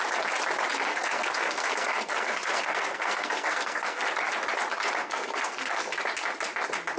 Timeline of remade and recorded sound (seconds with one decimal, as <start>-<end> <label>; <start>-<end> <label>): 0.0-0.9 recorded; 0.9-4.0 remade; 4.0-5.0 recorded; 5.0-6.0 remade; 6.0-7.0 recorded